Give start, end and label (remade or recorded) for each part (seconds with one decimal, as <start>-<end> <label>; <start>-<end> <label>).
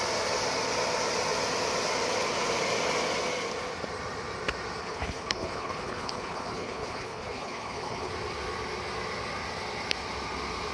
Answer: 0.0-4.8 recorded; 4.8-8.1 remade; 8.1-10.7 recorded